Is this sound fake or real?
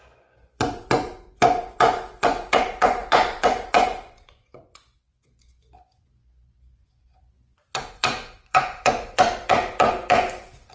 fake